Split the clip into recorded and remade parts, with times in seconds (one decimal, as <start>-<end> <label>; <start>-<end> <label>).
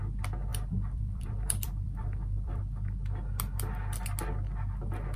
0.0-0.5 recorded; 0.5-2.6 remade; 2.6-5.2 recorded